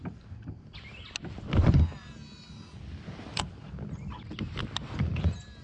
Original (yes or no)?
yes